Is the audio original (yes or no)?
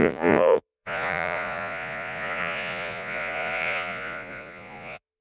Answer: no